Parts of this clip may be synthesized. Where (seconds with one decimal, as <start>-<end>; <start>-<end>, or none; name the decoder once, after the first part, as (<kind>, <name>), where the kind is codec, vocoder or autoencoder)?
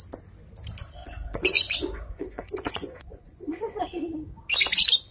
1.0-3.8 (vocoder, Vocos)